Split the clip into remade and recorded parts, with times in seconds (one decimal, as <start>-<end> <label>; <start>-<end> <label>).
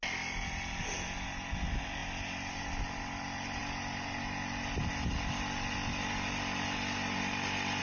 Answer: 0.0-7.8 recorded